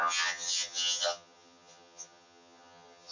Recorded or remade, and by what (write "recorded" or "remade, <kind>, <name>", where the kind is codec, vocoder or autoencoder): remade, vocoder, HiFi-GAN